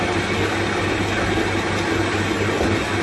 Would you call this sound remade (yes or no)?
no